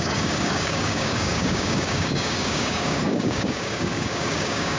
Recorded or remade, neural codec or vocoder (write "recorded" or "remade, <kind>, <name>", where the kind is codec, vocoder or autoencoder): remade, codec, DAC